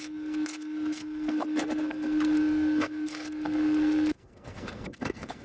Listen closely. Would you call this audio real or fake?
fake